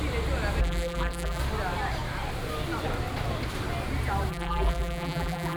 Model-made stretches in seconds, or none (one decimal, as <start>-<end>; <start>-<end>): 0.6-1.4; 4.3-5.6